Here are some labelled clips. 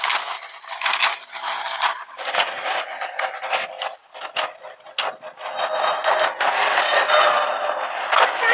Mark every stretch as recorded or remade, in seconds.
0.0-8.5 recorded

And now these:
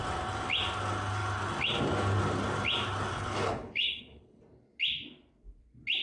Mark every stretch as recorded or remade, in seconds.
0.0-3.1 recorded; 3.1-4.4 remade; 4.4-6.0 recorded